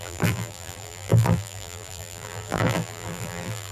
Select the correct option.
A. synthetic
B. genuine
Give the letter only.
A